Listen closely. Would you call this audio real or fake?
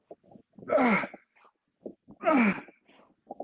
real